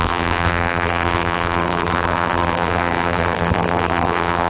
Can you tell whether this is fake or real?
fake